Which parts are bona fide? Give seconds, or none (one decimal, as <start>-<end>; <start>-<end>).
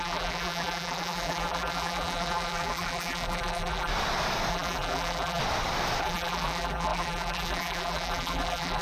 3.9-4.5; 5.4-6.0